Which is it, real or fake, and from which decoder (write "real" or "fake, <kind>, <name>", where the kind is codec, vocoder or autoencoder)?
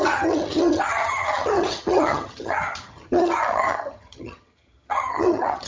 fake, vocoder, HiFi-GAN